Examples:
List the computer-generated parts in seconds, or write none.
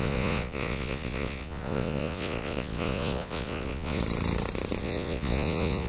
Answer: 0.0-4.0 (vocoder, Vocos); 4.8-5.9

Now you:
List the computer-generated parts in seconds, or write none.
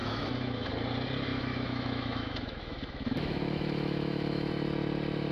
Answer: 0.0-0.7 (autoencoder, DAC-VAE); 1.3-4.5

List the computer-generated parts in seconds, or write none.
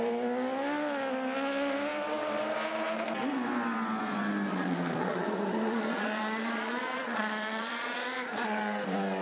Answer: 4.5-8.6 (vocoder, Vocos)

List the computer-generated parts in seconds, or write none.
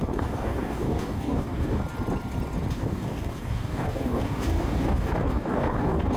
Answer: 0.0-1.8 (codec, DAC); 2.7-6.2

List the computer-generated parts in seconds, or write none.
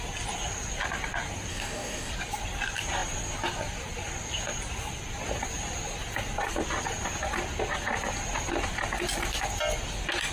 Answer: 1.5-2.1 (codec, DAC)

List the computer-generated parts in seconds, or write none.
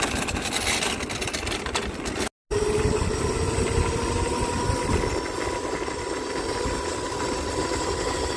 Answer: none